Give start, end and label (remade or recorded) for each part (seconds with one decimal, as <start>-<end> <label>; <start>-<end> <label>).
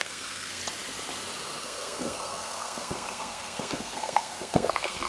0.0-0.6 remade; 0.6-1.6 recorded; 1.6-5.1 remade